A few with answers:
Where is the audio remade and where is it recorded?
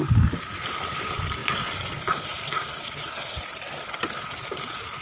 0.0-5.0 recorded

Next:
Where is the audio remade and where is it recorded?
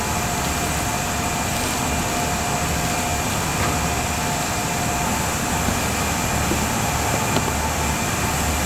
0.0-8.7 recorded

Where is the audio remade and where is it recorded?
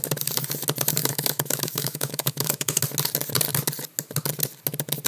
0.0-1.0 recorded; 1.0-2.8 remade; 2.8-5.1 recorded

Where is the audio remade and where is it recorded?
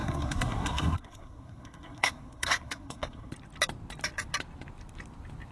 0.0-3.3 remade; 3.3-5.5 recorded